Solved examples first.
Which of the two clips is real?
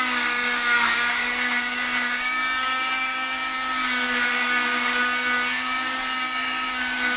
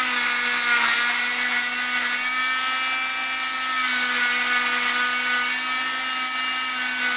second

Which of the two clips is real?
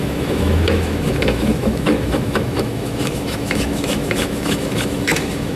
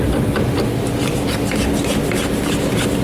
second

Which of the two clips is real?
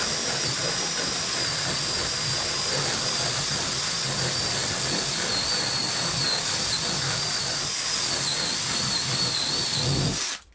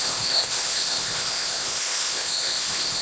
first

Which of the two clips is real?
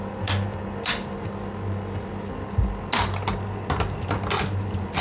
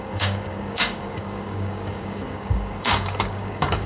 first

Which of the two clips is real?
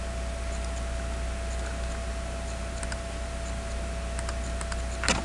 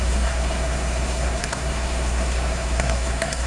first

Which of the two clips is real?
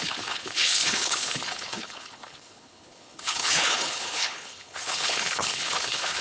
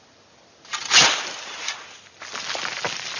second